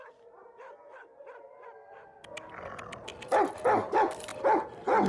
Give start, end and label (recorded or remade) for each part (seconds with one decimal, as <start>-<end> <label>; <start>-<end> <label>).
0.0-3.1 remade; 3.1-3.9 recorded; 3.9-5.1 remade